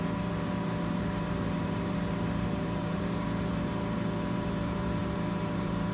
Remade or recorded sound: remade